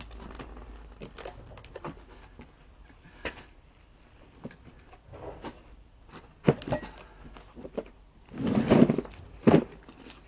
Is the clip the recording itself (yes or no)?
yes